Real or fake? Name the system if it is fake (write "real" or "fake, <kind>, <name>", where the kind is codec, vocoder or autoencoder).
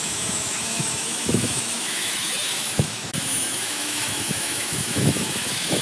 fake, autoencoder, DAC-VAE